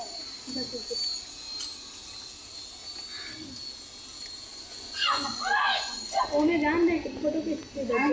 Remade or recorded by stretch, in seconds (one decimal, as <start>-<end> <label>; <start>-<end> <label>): 0.0-4.5 recorded; 4.5-6.2 remade; 6.2-8.1 recorded